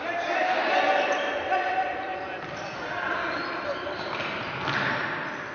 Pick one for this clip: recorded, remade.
recorded